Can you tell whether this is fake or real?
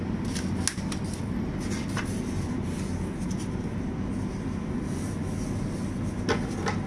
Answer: real